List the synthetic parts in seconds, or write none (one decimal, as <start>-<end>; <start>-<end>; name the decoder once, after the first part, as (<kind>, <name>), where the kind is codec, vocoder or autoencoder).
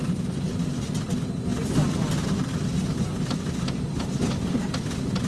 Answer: none